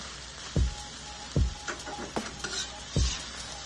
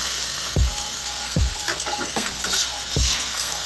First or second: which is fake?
second